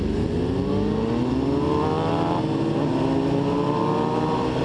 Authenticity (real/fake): real